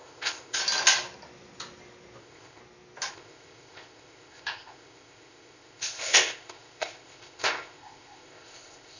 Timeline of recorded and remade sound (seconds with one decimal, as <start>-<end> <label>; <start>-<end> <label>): 0.0-0.6 remade; 0.6-2.2 recorded; 2.2-2.6 remade; 2.6-3.1 recorded; 3.1-9.0 remade